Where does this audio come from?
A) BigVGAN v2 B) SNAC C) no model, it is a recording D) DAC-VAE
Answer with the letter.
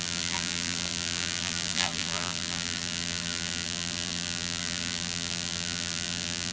A